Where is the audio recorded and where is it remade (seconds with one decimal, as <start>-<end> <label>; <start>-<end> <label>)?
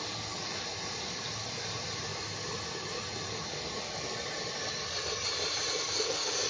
0.0-6.5 recorded